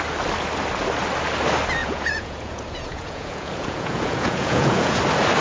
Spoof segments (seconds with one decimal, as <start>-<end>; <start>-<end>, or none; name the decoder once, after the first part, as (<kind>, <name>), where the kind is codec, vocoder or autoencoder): 1.8-5.0 (vocoder, Vocos)

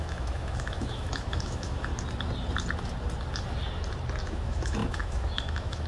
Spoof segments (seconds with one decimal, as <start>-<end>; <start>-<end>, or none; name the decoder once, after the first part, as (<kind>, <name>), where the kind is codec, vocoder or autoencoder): 0.0-1.9 (autoencoder, DAC-VAE); 4.2-5.9

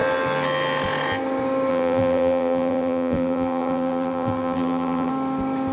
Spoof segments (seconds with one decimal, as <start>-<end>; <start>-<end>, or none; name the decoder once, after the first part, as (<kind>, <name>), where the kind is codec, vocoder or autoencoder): 1.7-5.1 (vocoder, BigVGAN v2)

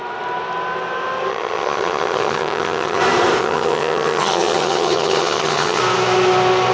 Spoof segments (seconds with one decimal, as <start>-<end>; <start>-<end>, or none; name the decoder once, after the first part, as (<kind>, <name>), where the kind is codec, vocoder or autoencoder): 1.3-3.0 (vocoder, HiFi-GAN); 3.4-5.8

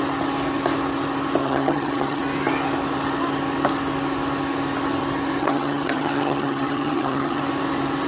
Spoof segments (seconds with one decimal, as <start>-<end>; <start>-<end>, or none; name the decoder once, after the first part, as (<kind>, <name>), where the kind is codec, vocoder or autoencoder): 1.4-2.2 (vocoder, HiFi-GAN); 5.4-7.4